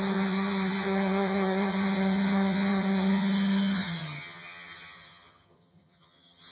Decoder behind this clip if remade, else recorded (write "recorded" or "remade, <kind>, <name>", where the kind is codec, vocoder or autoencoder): remade, vocoder, HiFi-GAN